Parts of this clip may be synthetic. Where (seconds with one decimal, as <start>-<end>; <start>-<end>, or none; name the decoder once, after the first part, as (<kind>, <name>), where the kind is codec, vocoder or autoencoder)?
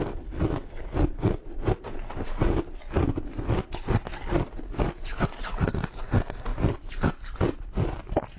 none